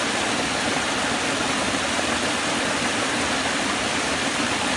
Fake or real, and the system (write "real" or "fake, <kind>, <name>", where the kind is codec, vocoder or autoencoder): real